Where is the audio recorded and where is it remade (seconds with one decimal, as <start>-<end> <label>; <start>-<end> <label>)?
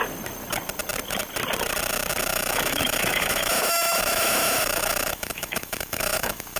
0.0-2.3 recorded; 2.3-6.6 remade